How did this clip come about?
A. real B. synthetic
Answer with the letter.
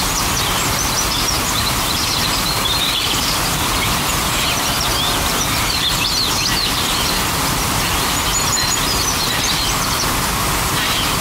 B